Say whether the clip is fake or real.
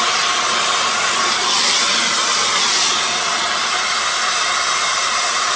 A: fake